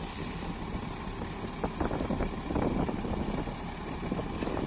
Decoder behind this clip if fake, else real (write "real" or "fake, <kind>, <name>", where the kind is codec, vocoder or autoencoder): real